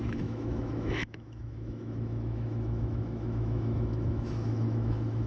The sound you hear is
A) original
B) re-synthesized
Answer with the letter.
B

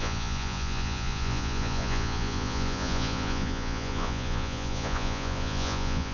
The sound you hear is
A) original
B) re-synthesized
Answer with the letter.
B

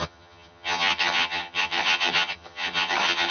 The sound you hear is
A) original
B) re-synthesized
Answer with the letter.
B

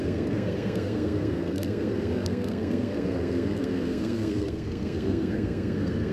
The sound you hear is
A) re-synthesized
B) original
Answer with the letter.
A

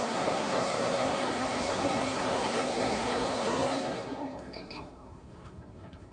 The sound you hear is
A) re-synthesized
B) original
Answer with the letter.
A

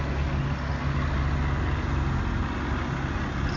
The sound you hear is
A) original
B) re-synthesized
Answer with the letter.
A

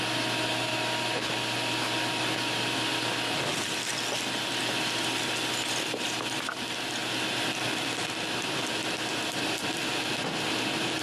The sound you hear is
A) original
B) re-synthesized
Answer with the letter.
A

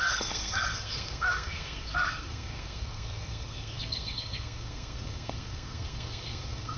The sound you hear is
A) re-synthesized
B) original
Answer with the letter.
A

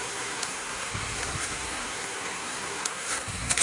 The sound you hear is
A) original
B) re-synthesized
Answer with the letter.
B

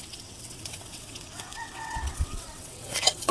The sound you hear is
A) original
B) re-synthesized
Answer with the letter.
B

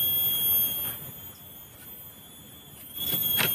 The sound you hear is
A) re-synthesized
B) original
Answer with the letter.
B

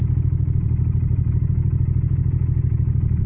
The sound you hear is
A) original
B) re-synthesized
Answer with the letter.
A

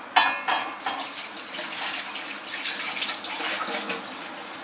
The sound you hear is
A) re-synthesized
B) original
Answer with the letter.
B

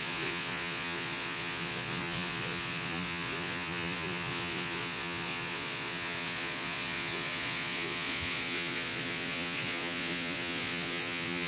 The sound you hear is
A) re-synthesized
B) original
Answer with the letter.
A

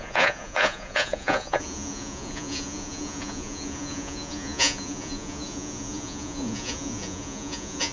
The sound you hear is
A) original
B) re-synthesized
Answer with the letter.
B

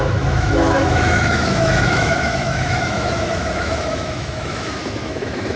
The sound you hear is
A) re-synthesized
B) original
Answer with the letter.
A